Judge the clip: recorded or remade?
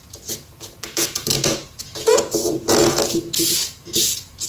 remade